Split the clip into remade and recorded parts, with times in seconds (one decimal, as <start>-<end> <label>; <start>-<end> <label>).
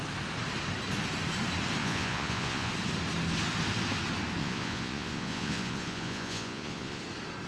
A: 0.0-1.8 recorded; 1.8-2.7 remade; 2.7-4.4 recorded; 4.4-7.0 remade; 7.0-7.5 recorded